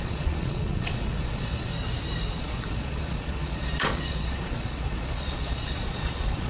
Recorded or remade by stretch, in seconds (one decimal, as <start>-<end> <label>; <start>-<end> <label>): 0.0-1.7 remade; 1.7-2.4 recorded; 2.4-6.5 remade